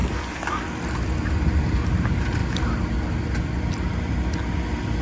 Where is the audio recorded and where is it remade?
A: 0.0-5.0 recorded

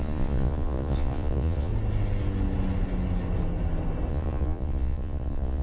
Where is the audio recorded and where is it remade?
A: 0.0-1.7 remade; 1.7-4.1 recorded; 4.1-5.6 remade

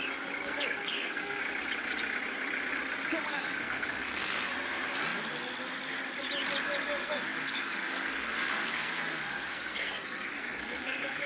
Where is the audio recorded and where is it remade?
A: 0.0-0.4 recorded; 0.4-1.4 remade; 1.4-3.3 recorded; 3.3-4.5 remade; 4.5-7.0 recorded; 7.0-11.3 remade

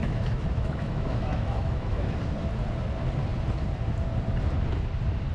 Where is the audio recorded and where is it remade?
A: 0.0-2.2 remade; 2.2-5.3 recorded

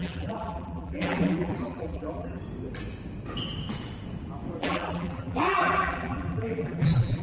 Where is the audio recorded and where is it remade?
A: 0.0-2.4 remade; 2.4-4.6 recorded; 4.6-7.2 remade

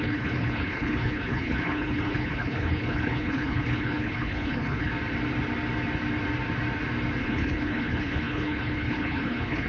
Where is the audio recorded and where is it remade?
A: 0.0-4.9 remade; 4.9-7.2 recorded; 7.2-9.7 remade